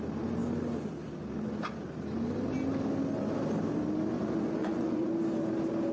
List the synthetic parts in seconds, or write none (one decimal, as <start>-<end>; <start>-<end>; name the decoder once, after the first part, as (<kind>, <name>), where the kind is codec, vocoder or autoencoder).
4.6-5.1 (vocoder, Vocos)